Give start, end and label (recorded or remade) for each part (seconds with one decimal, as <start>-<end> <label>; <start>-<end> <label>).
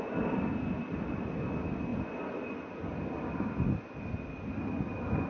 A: 0.0-5.3 recorded